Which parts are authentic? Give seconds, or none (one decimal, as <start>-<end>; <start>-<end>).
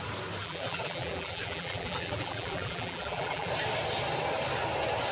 0.0-0.4; 3.5-5.1